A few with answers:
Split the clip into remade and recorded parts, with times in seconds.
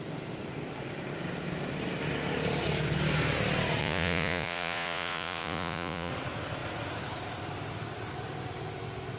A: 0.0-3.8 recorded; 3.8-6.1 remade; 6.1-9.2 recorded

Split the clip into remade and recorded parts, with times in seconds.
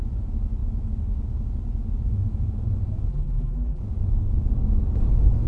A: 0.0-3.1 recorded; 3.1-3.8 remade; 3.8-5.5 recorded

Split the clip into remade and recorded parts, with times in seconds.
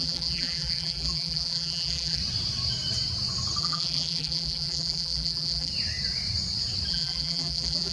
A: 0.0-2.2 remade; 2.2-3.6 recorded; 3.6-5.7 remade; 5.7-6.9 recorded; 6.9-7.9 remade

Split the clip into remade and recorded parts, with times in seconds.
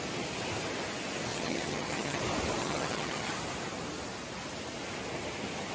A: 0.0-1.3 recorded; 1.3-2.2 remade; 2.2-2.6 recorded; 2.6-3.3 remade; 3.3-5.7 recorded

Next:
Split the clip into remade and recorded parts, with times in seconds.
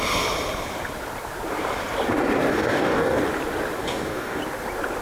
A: 0.0-2.5 recorded; 2.5-3.2 remade; 3.2-3.8 recorded; 3.8-4.4 remade; 4.4-5.0 recorded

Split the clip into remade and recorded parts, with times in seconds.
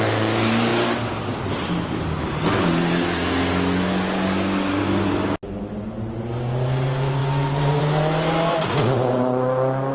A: 0.0-9.9 recorded